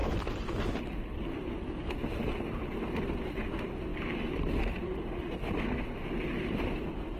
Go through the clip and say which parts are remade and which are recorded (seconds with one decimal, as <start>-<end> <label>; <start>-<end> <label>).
0.0-3.9 recorded; 3.9-4.6 remade; 4.6-7.2 recorded